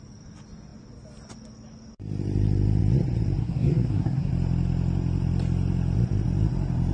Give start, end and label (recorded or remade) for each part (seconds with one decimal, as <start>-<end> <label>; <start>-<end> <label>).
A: 0.0-3.4 recorded; 3.4-4.3 remade; 4.3-6.9 recorded